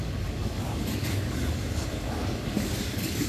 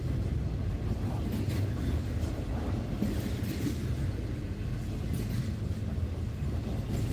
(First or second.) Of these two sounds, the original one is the second